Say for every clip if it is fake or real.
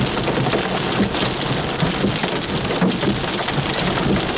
real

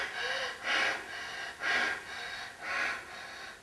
real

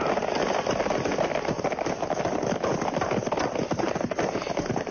real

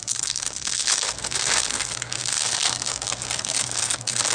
fake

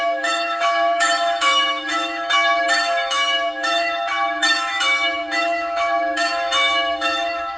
fake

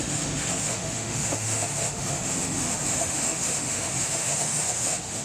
fake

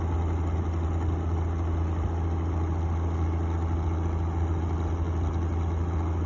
real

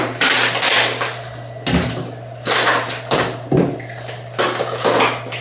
real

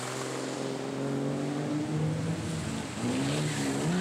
real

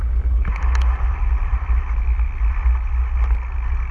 real